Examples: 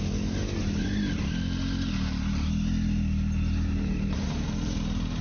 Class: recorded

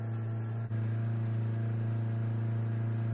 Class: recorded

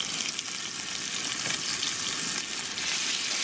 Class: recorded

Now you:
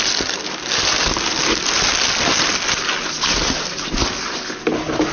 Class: recorded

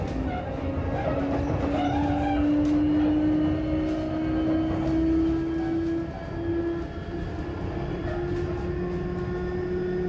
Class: recorded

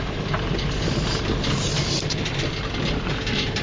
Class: recorded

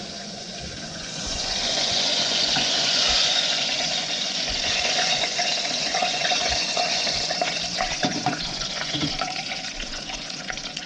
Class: remade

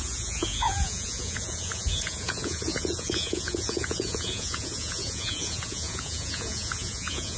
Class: remade